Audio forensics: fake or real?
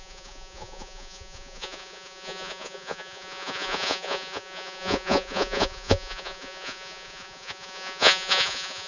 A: fake